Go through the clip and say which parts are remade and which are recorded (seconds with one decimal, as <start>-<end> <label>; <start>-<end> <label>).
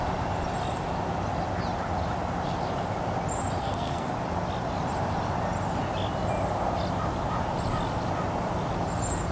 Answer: 0.0-3.6 recorded; 3.6-4.1 remade; 4.1-9.3 recorded